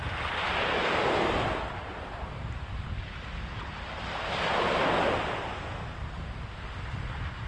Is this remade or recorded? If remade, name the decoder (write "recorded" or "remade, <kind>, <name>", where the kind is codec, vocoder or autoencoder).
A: recorded